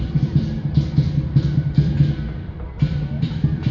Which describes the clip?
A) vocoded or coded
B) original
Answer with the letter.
A